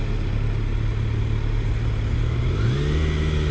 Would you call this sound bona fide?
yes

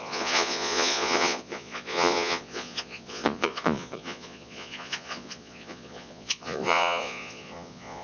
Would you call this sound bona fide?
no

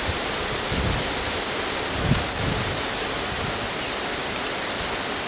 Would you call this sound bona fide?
yes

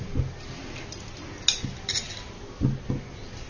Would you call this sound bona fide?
yes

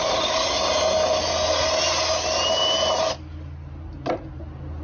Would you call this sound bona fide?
yes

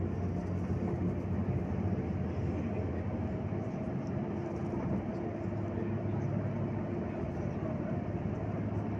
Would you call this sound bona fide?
yes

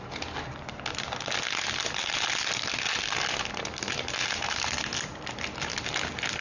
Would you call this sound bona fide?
yes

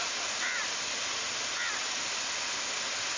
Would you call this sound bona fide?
yes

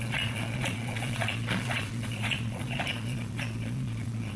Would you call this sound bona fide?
no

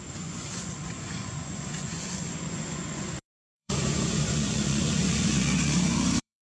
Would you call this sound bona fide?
no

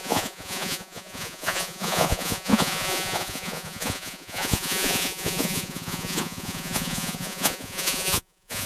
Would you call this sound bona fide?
no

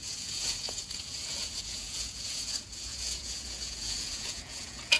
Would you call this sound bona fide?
no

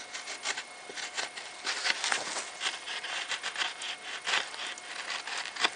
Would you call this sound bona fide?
yes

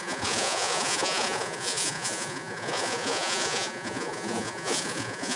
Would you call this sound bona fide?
no